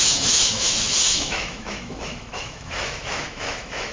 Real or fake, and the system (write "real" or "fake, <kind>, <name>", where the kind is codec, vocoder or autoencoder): fake, autoencoder, DAC-VAE